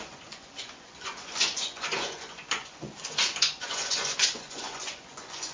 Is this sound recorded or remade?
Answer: remade